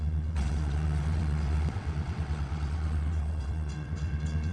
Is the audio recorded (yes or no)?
no